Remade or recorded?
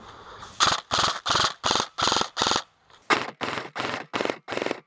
recorded